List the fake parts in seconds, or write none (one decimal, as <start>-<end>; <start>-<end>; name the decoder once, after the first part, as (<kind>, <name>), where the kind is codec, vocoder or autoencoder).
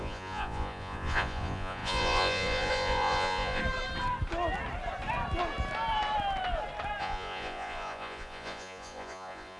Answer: 0.0-3.6 (vocoder, Vocos); 7.0-9.6